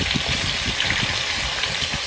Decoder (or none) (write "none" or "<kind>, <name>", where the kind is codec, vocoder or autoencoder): none